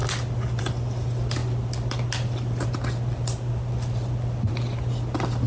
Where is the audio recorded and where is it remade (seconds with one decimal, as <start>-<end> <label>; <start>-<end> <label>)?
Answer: 0.0-5.5 recorded